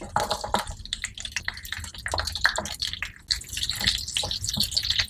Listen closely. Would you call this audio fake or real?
real